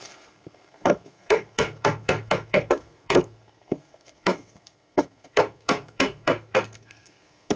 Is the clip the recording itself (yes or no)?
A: no